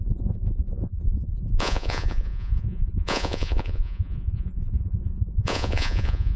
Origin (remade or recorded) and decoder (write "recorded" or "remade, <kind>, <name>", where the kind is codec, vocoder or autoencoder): remade, vocoder, Vocos